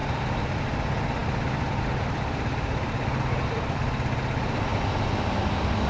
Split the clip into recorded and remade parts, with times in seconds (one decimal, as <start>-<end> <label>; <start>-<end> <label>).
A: 0.0-0.6 remade; 0.6-1.2 recorded; 1.2-3.8 remade; 3.8-4.7 recorded; 4.7-5.9 remade